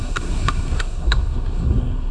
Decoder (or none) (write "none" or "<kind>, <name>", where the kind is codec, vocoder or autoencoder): codec, SNAC